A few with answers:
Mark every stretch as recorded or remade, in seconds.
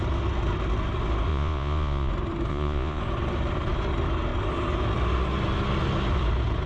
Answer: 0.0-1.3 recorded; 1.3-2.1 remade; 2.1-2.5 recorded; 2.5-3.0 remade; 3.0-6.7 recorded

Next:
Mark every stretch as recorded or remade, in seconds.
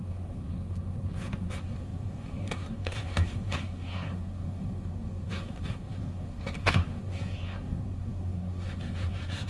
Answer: 0.0-9.5 remade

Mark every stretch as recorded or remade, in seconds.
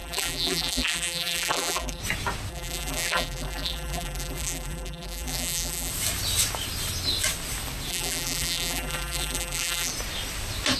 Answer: 0.0-2.0 remade; 2.0-2.5 recorded; 2.5-5.9 remade; 5.9-7.9 recorded; 7.9-9.9 remade; 9.9-10.8 recorded